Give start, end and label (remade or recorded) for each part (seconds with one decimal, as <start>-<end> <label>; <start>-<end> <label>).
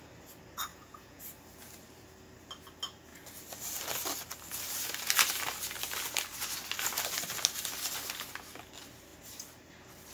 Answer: 0.0-0.7 recorded; 0.7-1.2 remade; 1.2-10.1 recorded